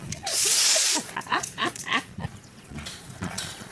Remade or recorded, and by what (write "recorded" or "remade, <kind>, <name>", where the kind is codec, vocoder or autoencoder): remade, vocoder, Vocos